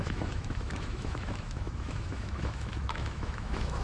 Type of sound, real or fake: fake